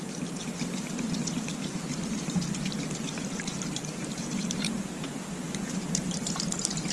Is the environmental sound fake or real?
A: fake